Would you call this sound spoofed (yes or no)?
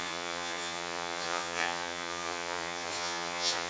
yes